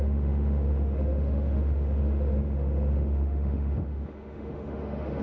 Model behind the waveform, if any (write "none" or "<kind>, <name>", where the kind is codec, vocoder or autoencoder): autoencoder, DAC-VAE